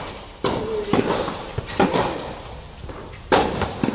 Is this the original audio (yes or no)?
yes